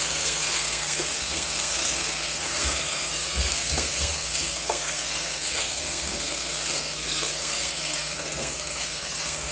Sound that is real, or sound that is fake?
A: fake